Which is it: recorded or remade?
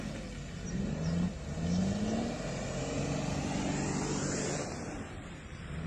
recorded